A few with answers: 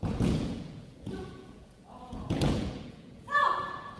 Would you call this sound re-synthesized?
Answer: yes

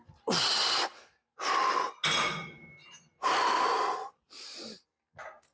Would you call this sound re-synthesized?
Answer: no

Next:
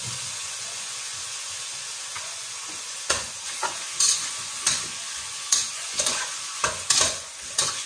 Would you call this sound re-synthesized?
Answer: yes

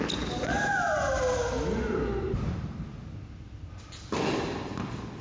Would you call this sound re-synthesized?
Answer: no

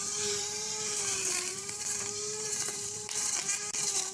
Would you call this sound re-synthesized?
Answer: yes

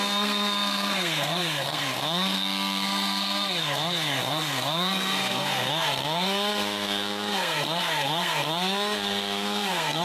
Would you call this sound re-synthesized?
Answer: yes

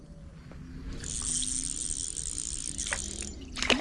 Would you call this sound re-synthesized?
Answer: no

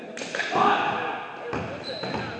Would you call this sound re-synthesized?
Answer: no